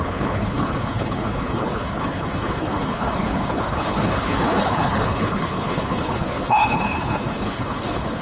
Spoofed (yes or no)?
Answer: yes